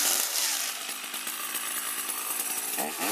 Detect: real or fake fake